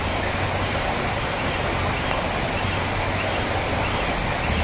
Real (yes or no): yes